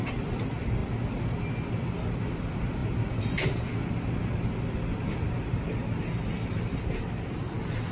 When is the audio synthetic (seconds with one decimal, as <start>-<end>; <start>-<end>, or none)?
none

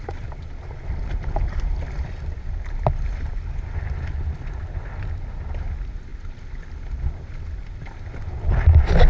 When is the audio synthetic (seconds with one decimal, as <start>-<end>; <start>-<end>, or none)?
none

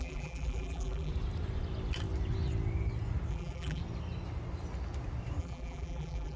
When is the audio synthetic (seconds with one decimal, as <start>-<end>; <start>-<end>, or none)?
0.0-1.1; 3.3-3.8; 5.4-6.4

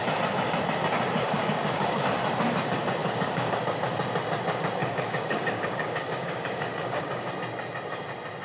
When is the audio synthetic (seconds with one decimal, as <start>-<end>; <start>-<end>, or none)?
1.2-2.0; 3.0-3.6; 4.8-7.3

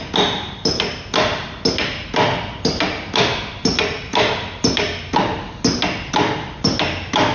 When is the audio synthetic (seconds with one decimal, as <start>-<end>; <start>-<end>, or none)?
none